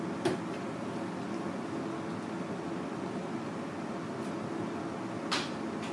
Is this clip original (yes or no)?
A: yes